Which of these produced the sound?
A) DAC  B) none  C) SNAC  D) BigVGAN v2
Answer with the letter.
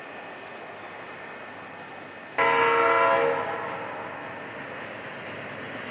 B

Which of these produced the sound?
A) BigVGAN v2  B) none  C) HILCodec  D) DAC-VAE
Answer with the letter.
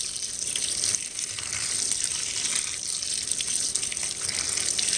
B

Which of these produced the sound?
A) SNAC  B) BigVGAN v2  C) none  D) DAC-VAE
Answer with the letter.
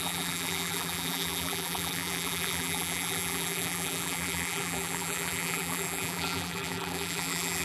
B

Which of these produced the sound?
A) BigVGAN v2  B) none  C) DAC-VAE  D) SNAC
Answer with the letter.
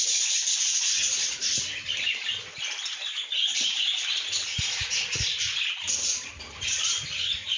A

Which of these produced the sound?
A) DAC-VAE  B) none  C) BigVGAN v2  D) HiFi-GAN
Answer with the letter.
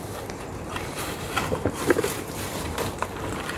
C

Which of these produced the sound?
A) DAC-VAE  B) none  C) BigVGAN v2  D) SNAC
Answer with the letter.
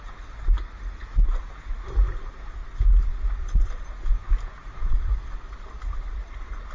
B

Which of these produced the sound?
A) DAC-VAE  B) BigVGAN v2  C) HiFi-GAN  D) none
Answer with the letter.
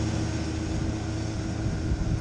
D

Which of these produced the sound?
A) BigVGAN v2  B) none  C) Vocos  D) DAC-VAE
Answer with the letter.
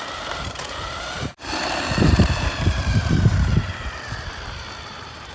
A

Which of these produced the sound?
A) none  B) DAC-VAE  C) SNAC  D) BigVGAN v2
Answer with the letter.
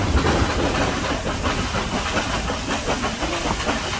A